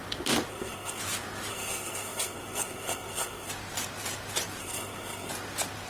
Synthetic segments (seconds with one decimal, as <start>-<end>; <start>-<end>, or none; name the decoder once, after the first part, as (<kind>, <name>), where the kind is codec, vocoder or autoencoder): 0.5-1.0 (codec, SNAC); 1.5-3.5; 4.6-5.3

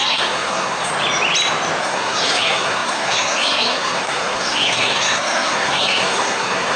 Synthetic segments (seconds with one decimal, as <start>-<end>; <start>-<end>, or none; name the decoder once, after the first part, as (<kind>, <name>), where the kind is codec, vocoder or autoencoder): 0.0-0.9 (codec, SNAC); 1.8-6.8

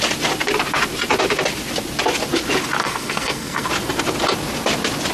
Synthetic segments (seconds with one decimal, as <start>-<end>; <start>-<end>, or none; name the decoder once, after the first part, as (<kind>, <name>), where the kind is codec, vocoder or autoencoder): 2.8-3.7 (codec, SNAC)

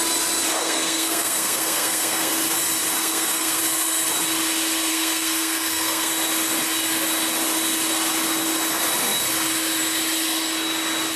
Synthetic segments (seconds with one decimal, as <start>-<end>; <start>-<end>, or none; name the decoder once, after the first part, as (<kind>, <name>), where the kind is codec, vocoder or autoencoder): 0.6-2.3 (codec, SNAC); 3.0-3.6; 4.9-6.1

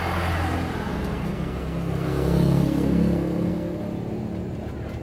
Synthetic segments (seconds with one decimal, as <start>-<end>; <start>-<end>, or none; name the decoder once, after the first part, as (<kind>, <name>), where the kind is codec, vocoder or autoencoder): 0.9-3.8 (codec, SNAC)

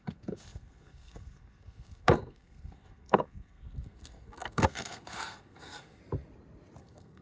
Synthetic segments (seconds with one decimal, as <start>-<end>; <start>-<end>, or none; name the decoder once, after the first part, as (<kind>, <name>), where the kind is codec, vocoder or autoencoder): 0.0-6.0 (codec, SNAC); 6.8-7.2

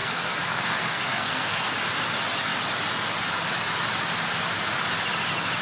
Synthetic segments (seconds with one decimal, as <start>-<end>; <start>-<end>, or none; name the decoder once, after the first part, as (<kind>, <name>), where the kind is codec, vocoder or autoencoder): 0.0-1.7 (codec, SNAC)